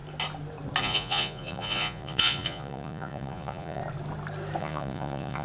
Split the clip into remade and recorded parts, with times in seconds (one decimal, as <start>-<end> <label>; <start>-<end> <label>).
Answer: 0.0-0.8 recorded; 0.8-3.8 remade; 3.8-4.6 recorded; 4.6-5.4 remade